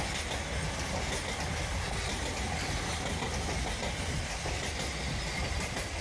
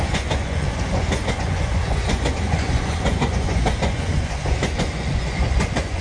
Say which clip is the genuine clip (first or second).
first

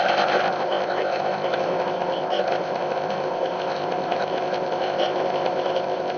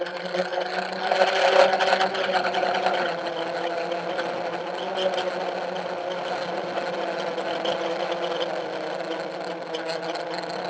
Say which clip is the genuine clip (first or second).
second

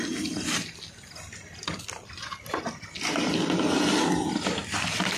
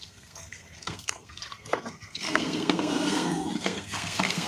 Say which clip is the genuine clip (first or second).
first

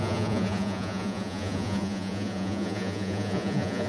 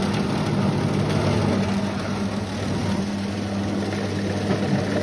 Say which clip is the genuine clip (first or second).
second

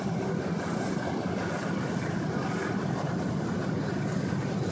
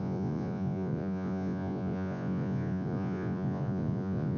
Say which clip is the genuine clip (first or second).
first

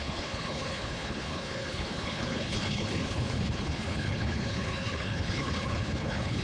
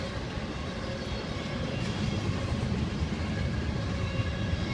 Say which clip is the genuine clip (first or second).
second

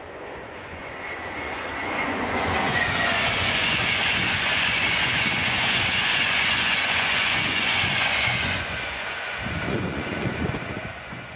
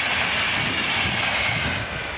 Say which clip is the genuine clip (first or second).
second